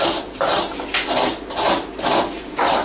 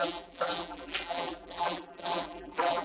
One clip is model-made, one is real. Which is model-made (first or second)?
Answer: second